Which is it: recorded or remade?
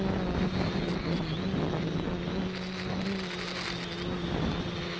recorded